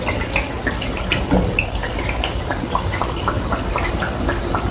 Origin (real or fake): real